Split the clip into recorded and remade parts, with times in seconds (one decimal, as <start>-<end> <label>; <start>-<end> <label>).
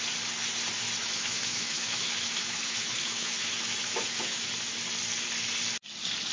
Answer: 0.0-1.0 recorded; 1.0-4.5 remade; 4.5-6.3 recorded